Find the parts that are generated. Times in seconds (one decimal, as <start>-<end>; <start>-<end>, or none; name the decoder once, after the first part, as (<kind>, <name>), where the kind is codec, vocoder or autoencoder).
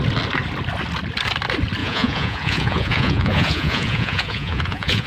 1.8-5.1 (vocoder, Vocos)